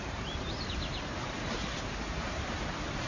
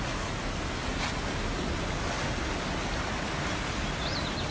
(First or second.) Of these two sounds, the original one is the second